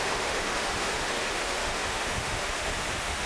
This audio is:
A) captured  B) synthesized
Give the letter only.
B